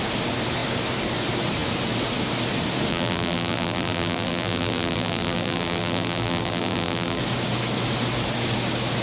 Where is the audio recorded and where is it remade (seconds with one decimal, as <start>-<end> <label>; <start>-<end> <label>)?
0.0-2.9 recorded; 2.9-7.2 remade; 7.2-9.0 recorded